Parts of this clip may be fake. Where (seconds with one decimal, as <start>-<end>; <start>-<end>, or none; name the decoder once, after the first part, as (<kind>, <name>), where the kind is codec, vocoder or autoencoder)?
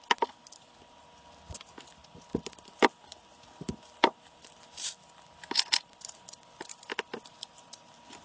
0.0-8.2 (vocoder, BigVGAN v2)